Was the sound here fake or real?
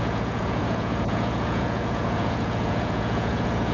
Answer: fake